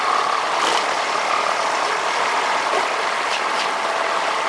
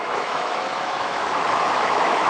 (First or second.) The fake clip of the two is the second